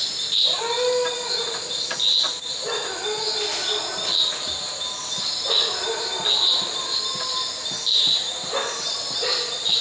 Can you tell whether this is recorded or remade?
recorded